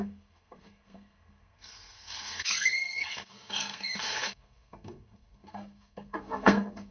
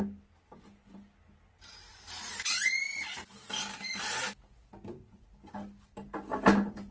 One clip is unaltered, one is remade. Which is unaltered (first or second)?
second